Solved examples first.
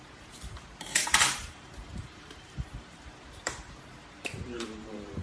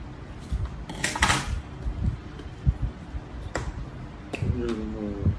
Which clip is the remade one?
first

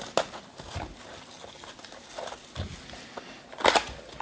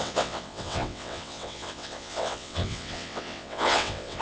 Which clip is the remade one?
second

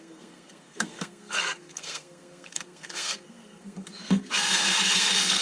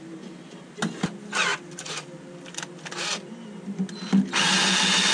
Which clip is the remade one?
first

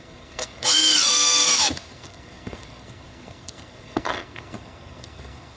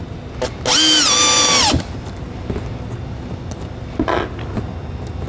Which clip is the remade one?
first